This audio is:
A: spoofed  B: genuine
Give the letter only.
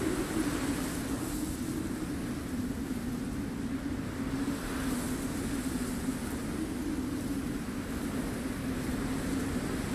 B